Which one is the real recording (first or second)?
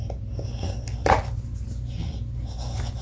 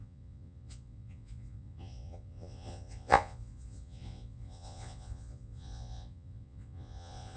first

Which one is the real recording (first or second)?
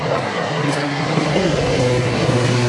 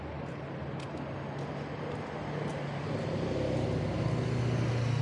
second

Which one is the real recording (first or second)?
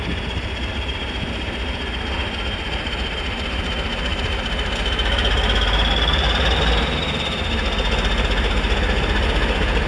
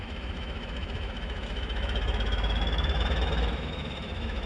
first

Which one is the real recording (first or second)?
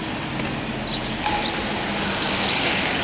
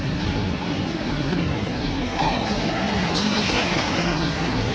first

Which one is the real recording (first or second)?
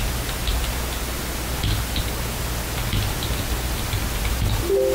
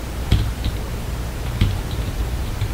first